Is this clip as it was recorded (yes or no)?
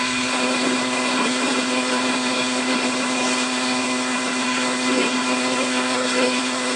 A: no